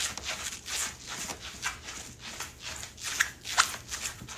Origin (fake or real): real